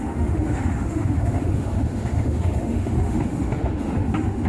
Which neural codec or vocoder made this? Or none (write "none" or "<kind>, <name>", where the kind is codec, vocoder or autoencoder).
autoencoder, DAC-VAE